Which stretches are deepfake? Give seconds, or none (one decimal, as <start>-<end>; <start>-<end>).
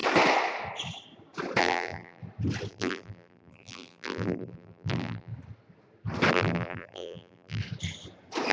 1.6-2.2; 2.7-5.3; 6.3-7.6